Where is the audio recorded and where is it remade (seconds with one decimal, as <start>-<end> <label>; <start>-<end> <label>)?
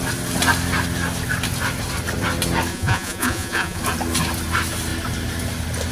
0.0-2.7 recorded; 2.7-3.8 remade; 3.8-5.9 recorded